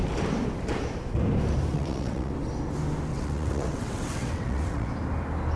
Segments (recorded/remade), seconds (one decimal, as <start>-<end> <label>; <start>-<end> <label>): 0.0-1.7 recorded; 1.7-2.3 remade; 2.3-3.1 recorded; 3.1-4.9 remade; 4.9-5.6 recorded

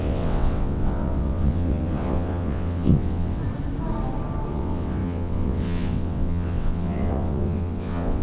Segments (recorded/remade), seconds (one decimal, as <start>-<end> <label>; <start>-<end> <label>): 0.0-3.4 remade; 3.4-4.5 recorded; 4.5-8.2 remade